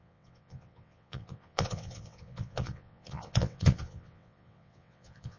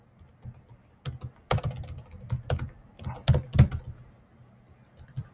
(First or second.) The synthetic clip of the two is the first